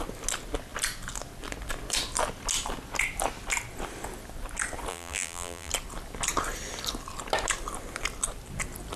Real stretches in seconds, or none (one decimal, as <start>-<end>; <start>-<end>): 0.0-4.9; 5.7-9.0